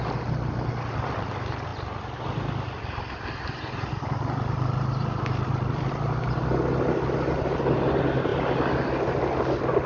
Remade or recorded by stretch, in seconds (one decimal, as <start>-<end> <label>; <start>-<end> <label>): 0.0-9.9 recorded

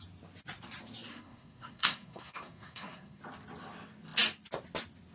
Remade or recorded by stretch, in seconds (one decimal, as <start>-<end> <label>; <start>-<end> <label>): 0.0-1.1 recorded; 1.1-3.2 remade; 3.2-5.1 recorded

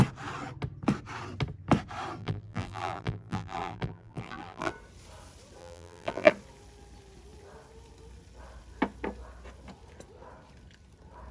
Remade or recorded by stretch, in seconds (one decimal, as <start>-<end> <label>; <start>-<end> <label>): 0.0-2.2 recorded; 2.2-4.7 remade; 4.7-5.6 recorded; 5.6-6.3 remade; 6.3-11.3 recorded

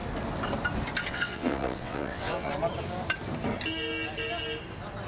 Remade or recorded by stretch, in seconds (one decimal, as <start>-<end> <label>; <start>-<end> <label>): 0.0-1.1 recorded; 1.1-2.5 remade; 2.5-5.1 recorded